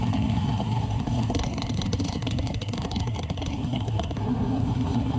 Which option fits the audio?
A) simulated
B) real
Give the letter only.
A